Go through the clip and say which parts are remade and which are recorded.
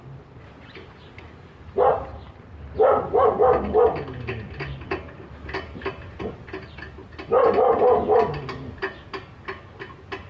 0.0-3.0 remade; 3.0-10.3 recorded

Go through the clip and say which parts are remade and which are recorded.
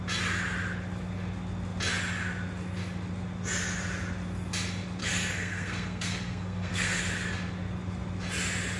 0.0-5.0 recorded; 5.0-7.0 remade; 7.0-8.8 recorded